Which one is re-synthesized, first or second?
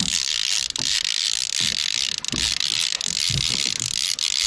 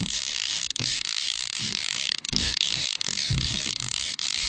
second